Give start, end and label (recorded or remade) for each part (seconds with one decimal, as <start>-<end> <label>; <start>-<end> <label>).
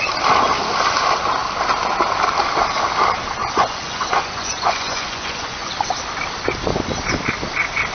0.0-3.4 recorded; 3.4-5.7 remade; 5.7-7.9 recorded